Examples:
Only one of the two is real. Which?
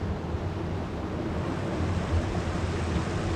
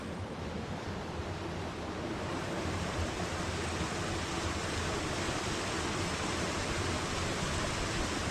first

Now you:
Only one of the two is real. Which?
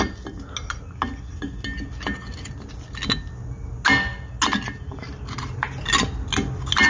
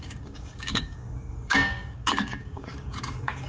first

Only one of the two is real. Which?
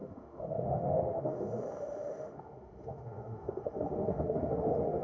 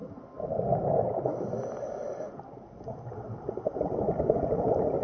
second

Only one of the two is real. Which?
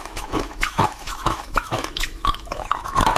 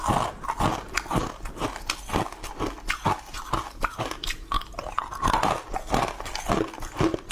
second